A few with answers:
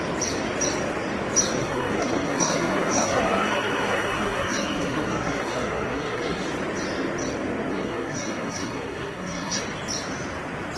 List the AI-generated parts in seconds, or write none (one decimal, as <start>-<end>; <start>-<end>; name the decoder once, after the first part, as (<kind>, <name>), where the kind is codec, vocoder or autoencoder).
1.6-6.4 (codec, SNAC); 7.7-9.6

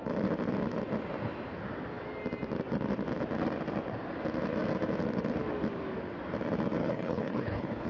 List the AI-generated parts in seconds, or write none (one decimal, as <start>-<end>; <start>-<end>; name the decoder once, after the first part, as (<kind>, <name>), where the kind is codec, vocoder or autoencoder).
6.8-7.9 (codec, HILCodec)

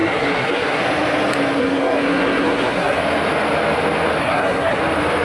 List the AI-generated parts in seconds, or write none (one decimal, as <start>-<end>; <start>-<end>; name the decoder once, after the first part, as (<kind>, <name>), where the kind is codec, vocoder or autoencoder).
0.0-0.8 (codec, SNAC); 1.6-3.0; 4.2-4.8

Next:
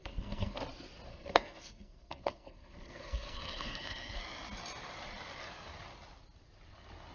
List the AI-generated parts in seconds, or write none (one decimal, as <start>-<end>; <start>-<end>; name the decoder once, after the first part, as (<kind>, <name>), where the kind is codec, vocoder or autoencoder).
0.0-0.6 (codec, SNAC); 1.1-4.2